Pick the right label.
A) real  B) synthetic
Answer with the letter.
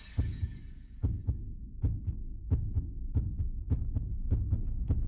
B